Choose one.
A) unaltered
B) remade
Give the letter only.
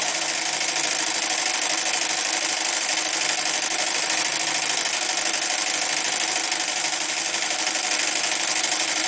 A